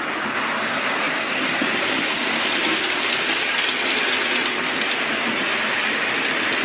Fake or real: real